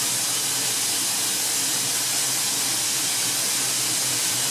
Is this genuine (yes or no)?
yes